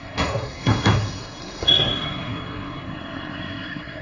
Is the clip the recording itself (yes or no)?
no